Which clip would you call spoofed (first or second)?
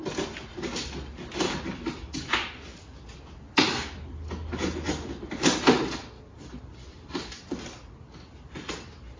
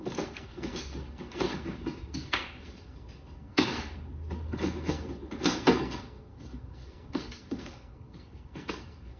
second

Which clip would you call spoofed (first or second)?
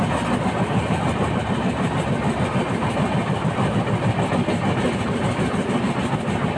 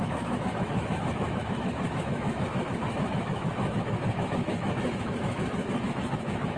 second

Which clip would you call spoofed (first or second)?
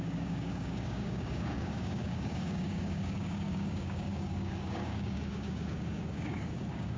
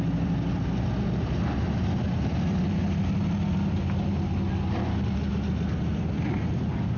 first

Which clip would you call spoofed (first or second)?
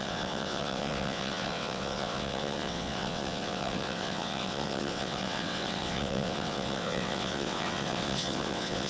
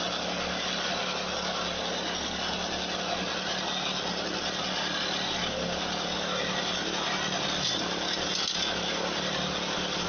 first